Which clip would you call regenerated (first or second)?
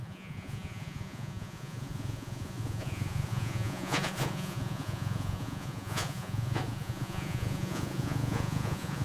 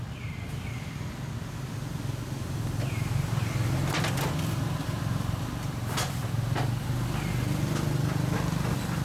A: first